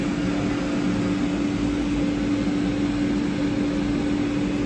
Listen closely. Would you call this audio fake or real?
real